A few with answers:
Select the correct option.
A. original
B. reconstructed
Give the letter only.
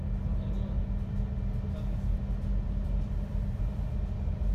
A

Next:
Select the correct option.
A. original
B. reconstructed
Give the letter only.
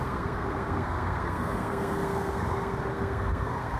B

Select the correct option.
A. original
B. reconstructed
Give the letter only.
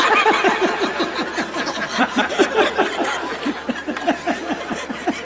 A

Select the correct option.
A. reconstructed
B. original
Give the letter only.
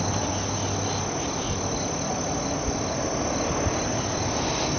B